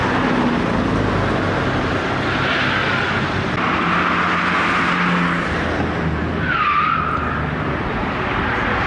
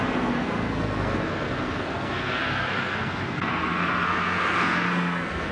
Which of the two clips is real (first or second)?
first